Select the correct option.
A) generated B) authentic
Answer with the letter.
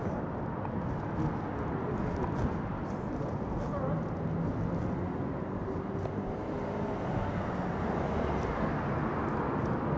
B